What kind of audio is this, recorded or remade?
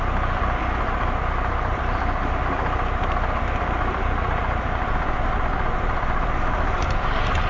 remade